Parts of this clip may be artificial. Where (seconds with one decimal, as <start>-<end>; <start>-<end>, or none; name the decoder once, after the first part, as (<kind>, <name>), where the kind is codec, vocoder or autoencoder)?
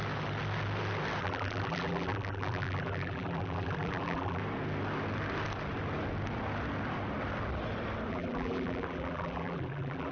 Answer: 1.2-4.4 (vocoder, BigVGAN v2); 8.1-10.1